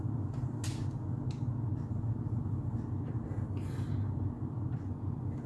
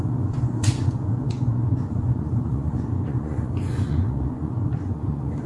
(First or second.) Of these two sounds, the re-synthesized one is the second